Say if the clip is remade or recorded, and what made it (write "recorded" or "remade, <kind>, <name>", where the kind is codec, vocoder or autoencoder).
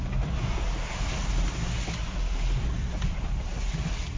recorded